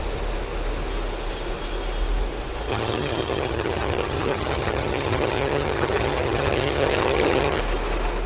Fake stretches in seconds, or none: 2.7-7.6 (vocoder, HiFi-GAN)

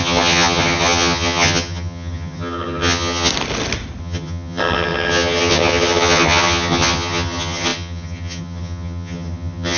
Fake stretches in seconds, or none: 0.0-3.3 (vocoder, HiFi-GAN); 4.0-9.8